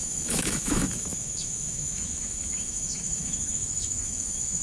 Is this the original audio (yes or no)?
no